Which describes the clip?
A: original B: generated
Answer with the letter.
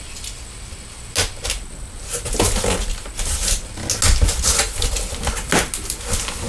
A